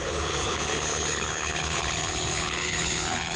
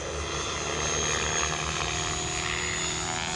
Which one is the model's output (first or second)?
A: first